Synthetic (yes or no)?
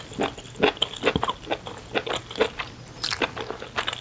no